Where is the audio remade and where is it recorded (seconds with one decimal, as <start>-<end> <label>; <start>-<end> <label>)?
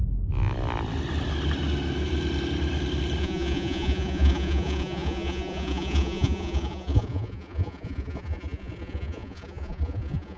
0.0-3.2 recorded; 3.2-10.4 remade